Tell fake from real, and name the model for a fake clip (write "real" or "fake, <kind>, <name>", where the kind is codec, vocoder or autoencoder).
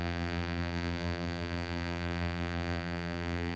fake, vocoder, BigVGAN v2